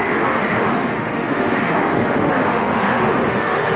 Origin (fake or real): fake